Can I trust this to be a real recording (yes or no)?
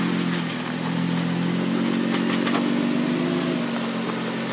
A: yes